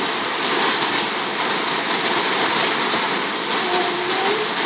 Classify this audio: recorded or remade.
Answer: remade